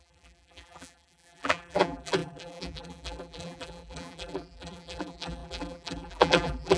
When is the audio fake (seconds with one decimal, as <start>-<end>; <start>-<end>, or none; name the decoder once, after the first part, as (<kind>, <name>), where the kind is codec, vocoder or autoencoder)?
0.0-6.8 (vocoder, BigVGAN v2)